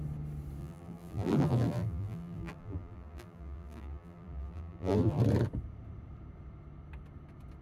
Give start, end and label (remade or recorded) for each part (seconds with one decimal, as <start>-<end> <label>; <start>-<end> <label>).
0.0-0.6 recorded; 0.6-5.2 remade; 5.2-7.6 recorded